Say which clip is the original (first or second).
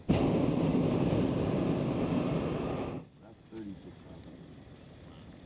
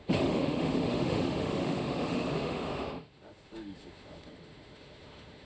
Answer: first